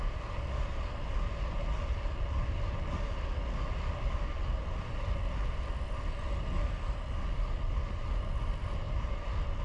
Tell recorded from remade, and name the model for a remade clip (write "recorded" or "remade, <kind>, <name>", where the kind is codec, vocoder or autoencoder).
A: recorded